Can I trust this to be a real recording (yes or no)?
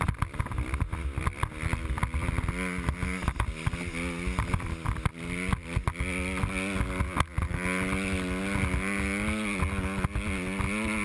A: yes